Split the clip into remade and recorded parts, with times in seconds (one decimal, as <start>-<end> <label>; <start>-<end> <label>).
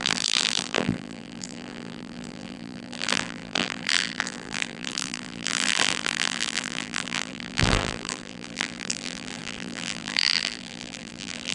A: 0.0-11.5 remade